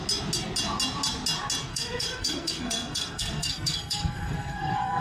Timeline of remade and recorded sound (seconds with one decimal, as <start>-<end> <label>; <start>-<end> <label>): 0.0-1.7 recorded; 1.7-5.0 remade